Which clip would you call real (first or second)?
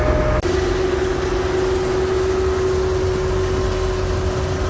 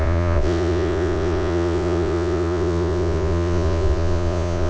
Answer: first